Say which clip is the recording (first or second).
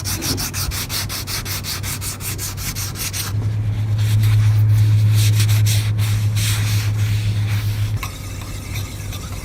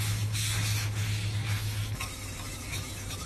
first